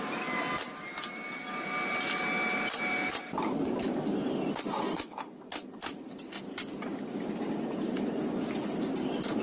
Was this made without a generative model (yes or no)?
yes